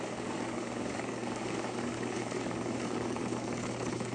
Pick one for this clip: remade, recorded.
remade